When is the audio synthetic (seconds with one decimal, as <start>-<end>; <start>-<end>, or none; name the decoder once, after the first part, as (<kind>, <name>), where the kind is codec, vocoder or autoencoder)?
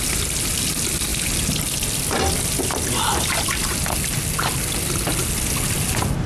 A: none